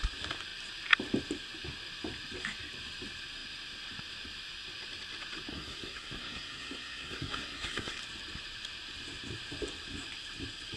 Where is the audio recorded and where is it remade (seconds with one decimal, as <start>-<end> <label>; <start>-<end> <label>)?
0.0-5.5 recorded; 5.5-8.0 remade; 8.0-10.8 recorded